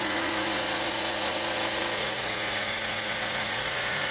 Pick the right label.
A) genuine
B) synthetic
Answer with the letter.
B